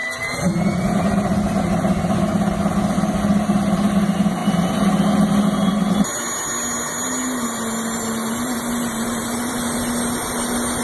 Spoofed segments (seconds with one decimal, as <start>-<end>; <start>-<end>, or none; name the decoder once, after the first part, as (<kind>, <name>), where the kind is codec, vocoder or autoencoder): none